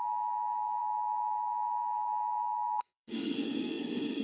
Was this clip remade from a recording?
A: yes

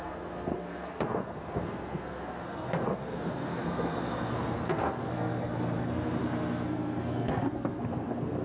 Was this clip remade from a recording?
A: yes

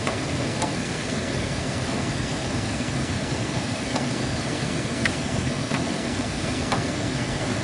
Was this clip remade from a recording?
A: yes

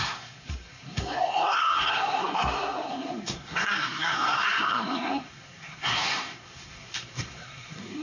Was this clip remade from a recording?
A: yes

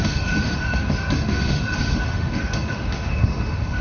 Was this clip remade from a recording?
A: yes